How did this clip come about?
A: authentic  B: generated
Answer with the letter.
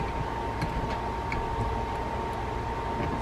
A